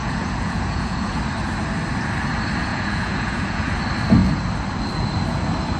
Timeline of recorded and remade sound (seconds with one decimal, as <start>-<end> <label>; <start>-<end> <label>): 0.0-1.2 remade; 1.2-2.7 recorded; 2.7-3.7 remade; 3.7-5.8 recorded